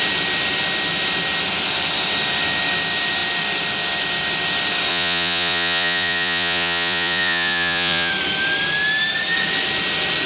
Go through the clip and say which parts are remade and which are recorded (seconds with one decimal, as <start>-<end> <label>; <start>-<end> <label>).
0.0-4.9 recorded; 4.9-8.1 remade; 8.1-10.3 recorded